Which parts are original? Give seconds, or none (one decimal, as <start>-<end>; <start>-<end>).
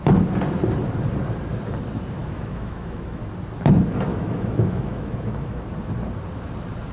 0.0-2.2; 3.2-4.1; 5.7-6.9